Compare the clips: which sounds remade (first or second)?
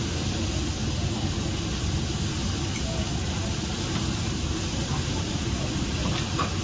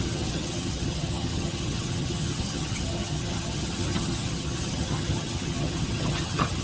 second